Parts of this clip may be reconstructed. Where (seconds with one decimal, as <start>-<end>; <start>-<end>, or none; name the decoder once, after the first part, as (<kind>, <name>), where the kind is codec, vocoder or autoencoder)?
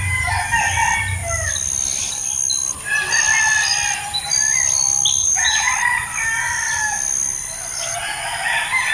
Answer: 5.2-5.7 (vocoder, Vocos)